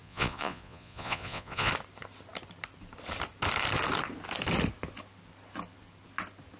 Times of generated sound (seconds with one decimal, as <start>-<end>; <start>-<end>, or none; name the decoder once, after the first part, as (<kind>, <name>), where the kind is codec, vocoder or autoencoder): 0.0-1.7 (vocoder, Vocos)